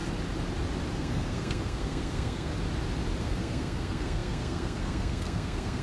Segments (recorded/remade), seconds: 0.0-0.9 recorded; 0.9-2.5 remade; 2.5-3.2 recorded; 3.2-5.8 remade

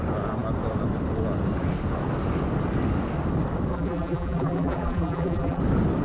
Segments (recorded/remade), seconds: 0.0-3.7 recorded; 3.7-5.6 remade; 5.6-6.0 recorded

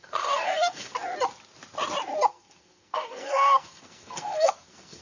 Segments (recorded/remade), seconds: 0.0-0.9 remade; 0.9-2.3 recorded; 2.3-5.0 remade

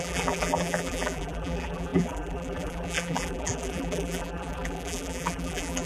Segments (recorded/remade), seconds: 0.0-5.9 remade